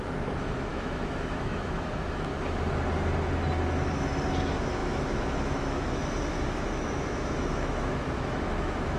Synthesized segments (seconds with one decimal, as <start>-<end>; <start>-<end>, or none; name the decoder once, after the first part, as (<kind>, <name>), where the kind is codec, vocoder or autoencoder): 0.0-2.3 (autoencoder, DAC-VAE); 4.3-9.0